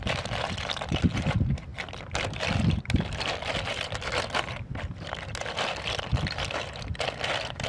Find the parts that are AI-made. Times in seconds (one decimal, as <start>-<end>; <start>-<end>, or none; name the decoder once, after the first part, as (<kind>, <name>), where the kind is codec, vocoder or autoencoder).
none